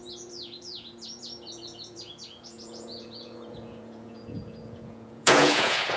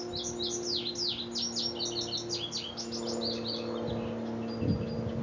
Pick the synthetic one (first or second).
first